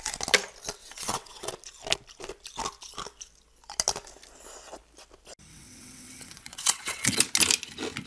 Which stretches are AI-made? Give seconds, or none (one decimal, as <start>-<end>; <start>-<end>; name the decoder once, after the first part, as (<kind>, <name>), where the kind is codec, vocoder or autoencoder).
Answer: 0.8-1.5 (vocoder, WaveNeXt); 5.5-7.2